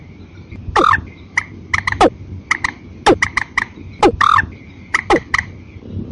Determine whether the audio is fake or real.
real